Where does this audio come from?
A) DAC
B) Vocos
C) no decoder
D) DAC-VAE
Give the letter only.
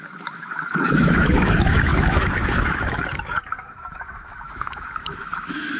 D